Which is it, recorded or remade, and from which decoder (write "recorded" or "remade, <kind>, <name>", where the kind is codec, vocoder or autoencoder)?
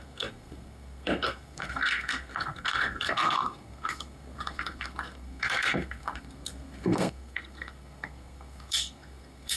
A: remade, codec, SNAC